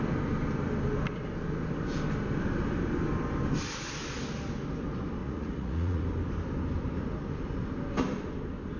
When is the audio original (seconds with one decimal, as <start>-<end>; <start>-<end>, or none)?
0.0-5.2; 6.0-8.8